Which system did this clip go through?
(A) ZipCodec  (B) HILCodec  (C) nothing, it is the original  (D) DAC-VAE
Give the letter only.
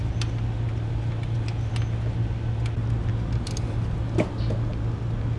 C